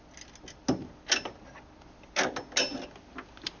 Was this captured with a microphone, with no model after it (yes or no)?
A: yes